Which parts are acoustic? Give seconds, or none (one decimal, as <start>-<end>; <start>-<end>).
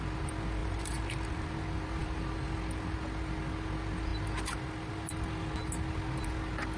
0.0-0.6; 1.5-6.8